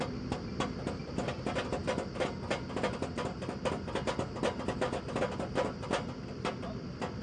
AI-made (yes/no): no